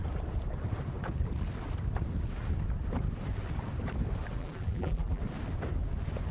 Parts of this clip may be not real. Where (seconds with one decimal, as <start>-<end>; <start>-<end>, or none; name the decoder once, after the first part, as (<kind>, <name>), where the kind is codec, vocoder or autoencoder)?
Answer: 4.4-5.2 (vocoder, BigVGAN v2)